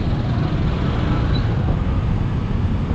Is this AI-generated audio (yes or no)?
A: no